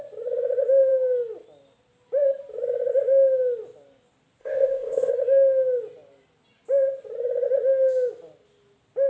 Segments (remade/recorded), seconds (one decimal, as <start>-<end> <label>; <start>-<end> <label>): 0.0-4.4 recorded; 4.4-5.1 remade; 5.1-9.1 recorded